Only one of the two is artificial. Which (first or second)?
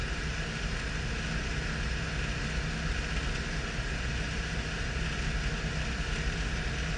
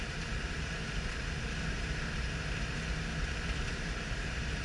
second